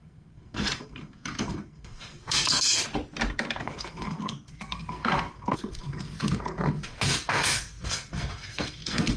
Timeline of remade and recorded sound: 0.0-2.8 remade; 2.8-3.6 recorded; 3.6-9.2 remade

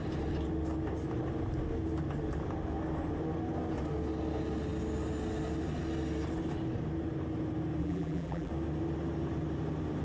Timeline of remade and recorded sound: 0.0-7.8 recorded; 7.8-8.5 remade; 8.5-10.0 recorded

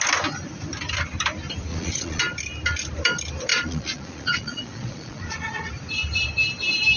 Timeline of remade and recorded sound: 0.0-1.7 recorded; 1.7-2.2 remade; 2.2-3.5 recorded; 3.5-5.7 remade; 5.7-7.0 recorded